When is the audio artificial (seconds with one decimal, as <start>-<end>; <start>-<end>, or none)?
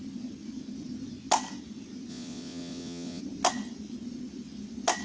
2.1-3.2